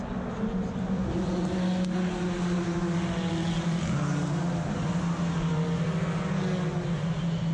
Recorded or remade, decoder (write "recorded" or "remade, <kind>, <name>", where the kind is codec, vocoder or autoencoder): recorded